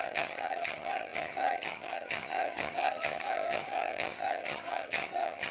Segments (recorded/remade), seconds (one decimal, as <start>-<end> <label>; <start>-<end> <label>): 0.0-5.5 remade